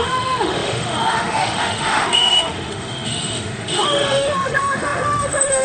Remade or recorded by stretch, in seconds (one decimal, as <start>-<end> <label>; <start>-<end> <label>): 0.0-5.6 remade